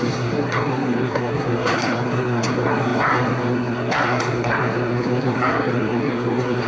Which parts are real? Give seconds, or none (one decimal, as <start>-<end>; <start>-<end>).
none